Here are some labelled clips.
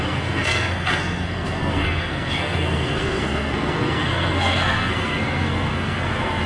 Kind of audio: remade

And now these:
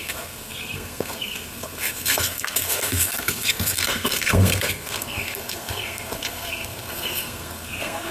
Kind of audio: remade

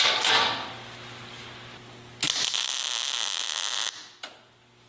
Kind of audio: recorded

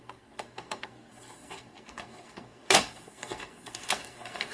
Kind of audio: remade